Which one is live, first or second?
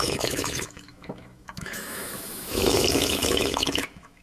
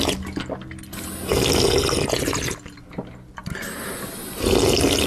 second